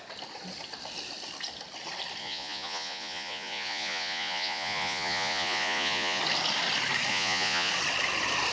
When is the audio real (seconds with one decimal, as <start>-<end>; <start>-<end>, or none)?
0.0-2.2; 6.2-7.1; 7.7-8.5